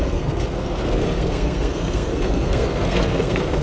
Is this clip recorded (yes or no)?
no